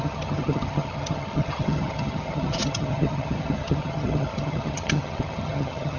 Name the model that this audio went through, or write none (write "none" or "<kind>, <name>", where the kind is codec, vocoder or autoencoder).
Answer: vocoder, HiFi-GAN